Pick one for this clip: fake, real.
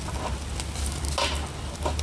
real